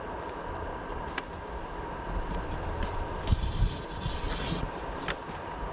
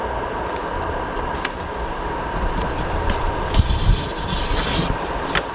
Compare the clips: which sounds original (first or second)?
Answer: first